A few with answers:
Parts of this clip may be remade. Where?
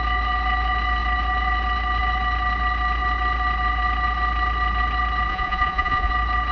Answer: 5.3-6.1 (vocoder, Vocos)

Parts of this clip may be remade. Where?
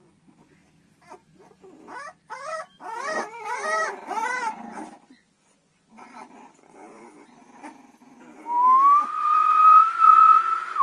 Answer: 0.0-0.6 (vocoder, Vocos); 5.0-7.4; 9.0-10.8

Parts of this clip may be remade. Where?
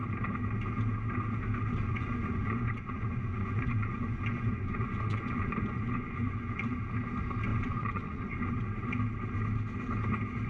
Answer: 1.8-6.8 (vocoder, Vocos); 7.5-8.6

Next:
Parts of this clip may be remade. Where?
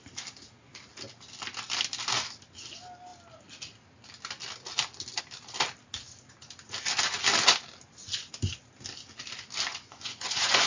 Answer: 9.7-10.7 (vocoder, Vocos)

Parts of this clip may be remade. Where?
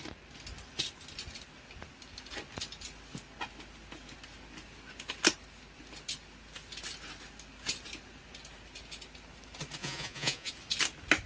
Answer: 9.8-10.5 (vocoder, Vocos)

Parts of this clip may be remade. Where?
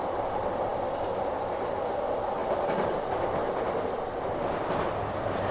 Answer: none